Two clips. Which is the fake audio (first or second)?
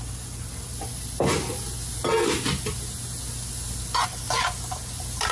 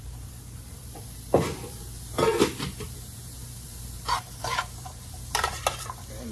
second